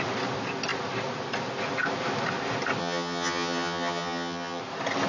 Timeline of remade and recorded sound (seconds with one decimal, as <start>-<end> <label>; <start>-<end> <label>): 0.0-2.8 recorded; 2.8-4.6 remade; 4.6-5.1 recorded